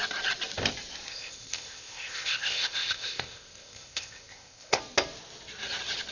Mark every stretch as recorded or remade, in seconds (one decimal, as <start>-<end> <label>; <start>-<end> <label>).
0.0-1.1 recorded; 1.1-4.8 remade; 4.8-6.1 recorded